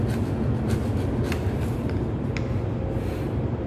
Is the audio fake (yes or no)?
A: no